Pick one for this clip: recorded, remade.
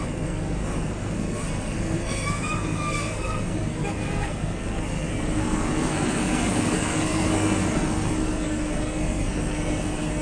remade